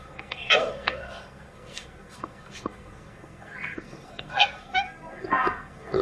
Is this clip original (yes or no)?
no